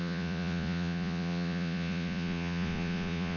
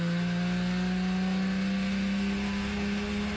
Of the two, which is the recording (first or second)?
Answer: second